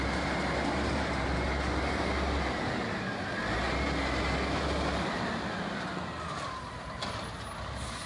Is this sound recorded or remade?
recorded